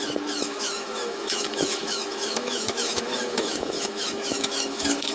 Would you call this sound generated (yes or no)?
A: yes